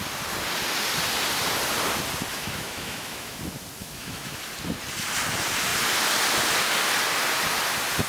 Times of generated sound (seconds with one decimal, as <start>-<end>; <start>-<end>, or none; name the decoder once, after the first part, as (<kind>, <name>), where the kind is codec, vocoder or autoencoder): 2.3-3.4 (autoencoder, DAC-VAE); 3.8-4.4